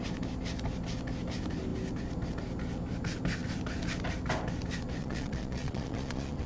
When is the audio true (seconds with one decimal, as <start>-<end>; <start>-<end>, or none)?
0.0-5.0